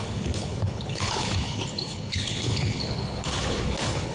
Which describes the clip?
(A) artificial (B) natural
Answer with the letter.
A